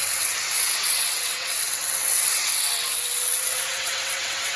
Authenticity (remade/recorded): remade